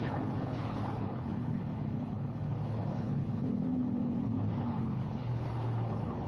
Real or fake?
fake